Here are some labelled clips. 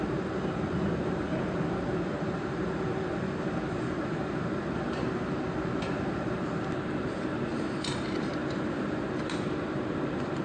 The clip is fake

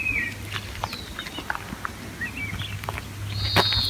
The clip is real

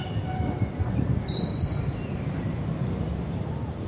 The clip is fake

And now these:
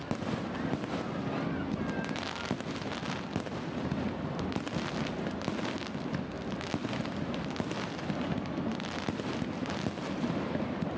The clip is real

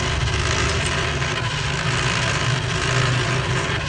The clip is fake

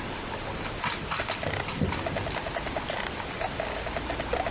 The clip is fake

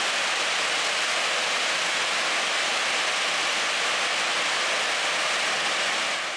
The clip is real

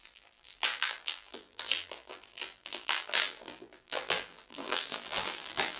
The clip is fake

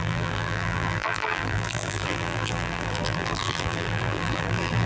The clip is fake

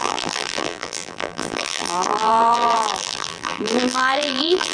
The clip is fake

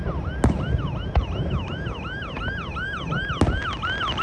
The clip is real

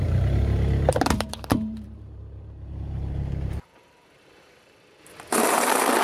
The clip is fake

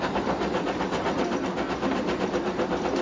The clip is real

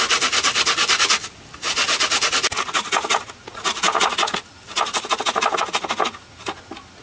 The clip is real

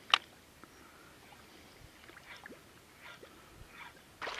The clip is real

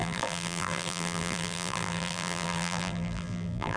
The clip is fake